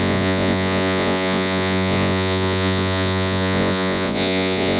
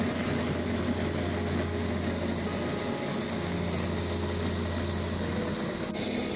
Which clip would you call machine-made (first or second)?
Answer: first